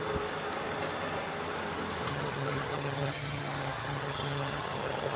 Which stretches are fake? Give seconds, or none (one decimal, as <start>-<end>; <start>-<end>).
2.1-5.2